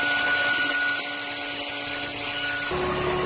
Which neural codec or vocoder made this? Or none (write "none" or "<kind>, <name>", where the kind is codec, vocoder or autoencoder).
none